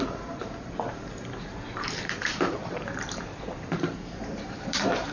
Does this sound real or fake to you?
fake